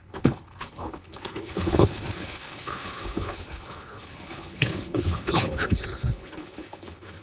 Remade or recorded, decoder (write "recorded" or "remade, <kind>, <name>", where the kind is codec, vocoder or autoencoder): remade, codec, HILCodec